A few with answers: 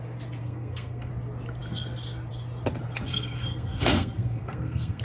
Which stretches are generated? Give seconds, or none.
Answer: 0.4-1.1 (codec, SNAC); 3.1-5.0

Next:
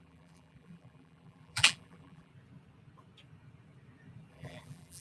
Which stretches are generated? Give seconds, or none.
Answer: 0.0-2.3 (vocoder, BigVGAN v2); 4.3-5.0

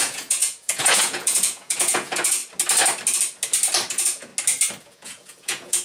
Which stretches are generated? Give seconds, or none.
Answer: 0.0-2.4 (vocoder, Vocos); 3.9-4.3; 4.8-5.8

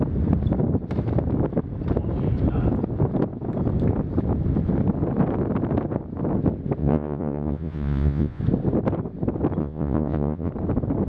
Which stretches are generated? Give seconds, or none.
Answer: 6.8-8.4 (vocoder, Vocos); 9.6-10.5

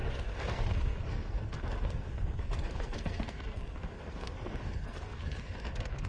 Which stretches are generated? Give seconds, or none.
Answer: 0.0-6.1 (codec, SNAC)

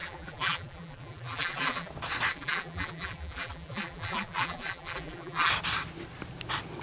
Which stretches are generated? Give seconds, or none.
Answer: 0.0-1.9 (vocoder, BigVGAN v2); 2.3-5.5